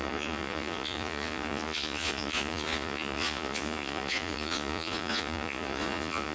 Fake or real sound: fake